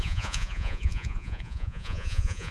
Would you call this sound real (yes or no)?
no